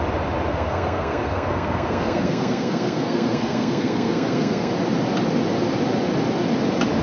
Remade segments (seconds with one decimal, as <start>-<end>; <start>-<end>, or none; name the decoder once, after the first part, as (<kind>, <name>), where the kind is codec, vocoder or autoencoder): 0.5-4.7 (codec, SNAC)